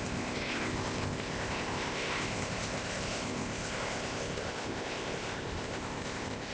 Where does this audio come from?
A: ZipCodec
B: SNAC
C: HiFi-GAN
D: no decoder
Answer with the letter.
A